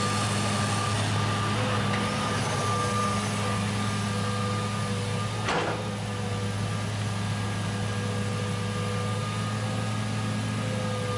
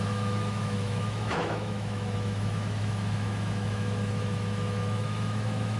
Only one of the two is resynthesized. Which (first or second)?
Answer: second